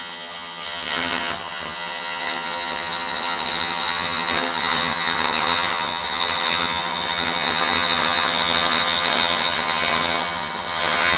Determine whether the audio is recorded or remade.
remade